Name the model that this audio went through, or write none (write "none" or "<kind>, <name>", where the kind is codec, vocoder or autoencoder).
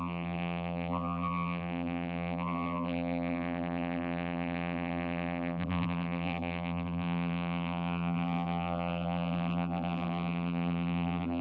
vocoder, BigVGAN v2